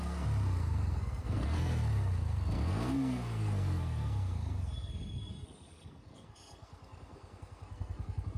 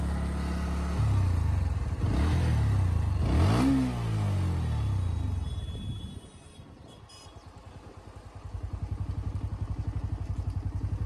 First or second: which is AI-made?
first